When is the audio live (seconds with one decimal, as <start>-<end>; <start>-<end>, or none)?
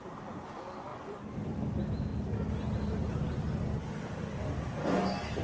0.0-0.9; 1.5-5.4